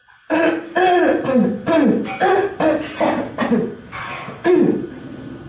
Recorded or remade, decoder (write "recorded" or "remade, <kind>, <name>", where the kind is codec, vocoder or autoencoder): recorded